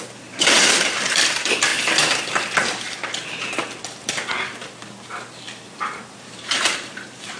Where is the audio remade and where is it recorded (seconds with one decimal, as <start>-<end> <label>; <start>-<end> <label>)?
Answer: 0.0-1.7 remade; 1.7-5.8 recorded; 5.8-7.4 remade